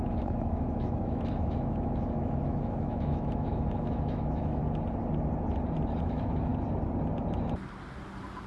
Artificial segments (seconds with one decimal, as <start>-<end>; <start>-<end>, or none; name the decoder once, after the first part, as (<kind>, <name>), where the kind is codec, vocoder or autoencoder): 0.0-4.6 (autoencoder, DAC-VAE); 6.0-6.5